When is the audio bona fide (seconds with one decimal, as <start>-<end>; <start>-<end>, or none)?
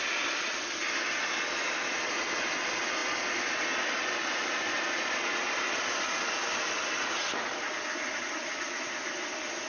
0.0-9.7